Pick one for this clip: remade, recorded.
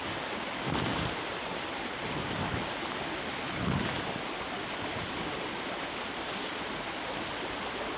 recorded